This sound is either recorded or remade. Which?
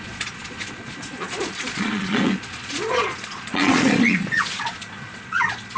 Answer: remade